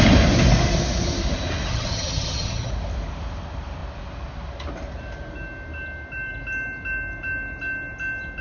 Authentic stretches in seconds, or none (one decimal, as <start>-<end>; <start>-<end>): 0.0-1.7; 2.7-8.4